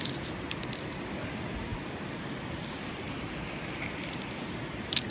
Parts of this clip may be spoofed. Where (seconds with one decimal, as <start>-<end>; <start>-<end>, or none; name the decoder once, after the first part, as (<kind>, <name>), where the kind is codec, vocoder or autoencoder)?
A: 1.7-3.3 (vocoder, BigVGAN v2)

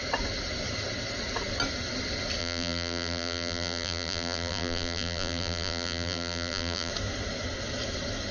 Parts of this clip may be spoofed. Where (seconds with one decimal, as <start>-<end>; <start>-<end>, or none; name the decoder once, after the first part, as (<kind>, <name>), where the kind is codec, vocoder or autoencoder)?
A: 2.4-6.9 (vocoder, BigVGAN v2)

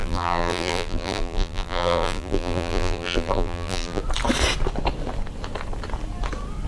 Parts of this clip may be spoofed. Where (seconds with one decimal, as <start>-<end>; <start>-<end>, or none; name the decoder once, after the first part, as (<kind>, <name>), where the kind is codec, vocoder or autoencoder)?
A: 0.0-4.0 (vocoder, BigVGAN v2)

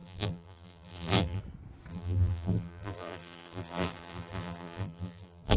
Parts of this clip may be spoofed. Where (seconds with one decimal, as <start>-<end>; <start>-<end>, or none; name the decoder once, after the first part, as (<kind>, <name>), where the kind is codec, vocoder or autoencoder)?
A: 0.0-1.4 (vocoder, BigVGAN v2); 1.9-5.6

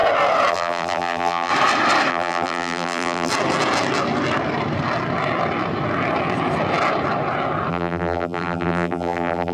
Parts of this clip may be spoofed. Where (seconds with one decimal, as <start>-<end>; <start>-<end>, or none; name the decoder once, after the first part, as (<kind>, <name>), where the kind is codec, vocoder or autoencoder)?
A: 0.5-1.5 (vocoder, BigVGAN v2); 2.1-3.3; 7.7-9.5

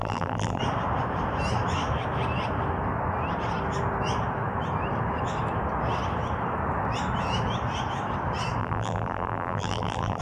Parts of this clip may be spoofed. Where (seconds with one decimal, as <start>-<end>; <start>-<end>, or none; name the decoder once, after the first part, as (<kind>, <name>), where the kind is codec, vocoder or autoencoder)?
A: 0.0-0.6 (vocoder, BigVGAN v2); 8.6-10.2

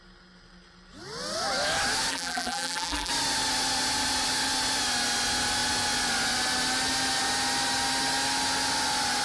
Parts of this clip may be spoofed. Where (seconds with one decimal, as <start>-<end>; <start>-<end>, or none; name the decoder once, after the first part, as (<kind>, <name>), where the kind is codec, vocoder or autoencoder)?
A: 2.1-3.1 (vocoder, BigVGAN v2)